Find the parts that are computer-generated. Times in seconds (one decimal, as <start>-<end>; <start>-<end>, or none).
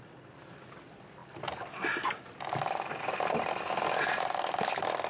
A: none